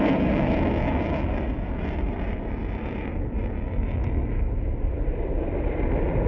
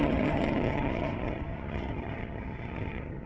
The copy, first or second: second